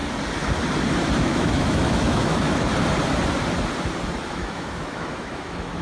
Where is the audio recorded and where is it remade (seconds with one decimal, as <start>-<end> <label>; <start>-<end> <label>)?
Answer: 0.0-1.2 recorded; 1.2-2.7 remade; 2.7-4.3 recorded; 4.3-5.8 remade